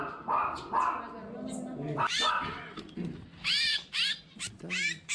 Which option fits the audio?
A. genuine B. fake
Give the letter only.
A